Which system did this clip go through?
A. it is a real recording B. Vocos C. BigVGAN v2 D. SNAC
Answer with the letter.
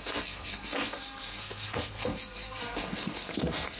D